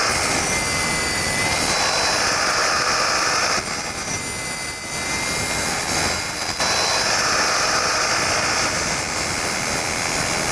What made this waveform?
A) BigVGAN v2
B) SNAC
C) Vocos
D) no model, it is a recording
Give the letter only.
D